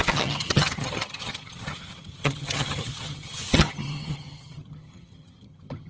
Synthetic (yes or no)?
yes